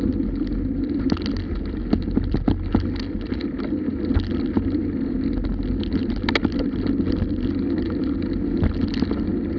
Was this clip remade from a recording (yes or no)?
no